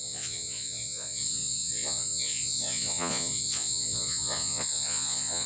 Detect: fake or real fake